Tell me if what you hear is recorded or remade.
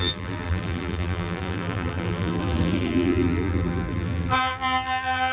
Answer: remade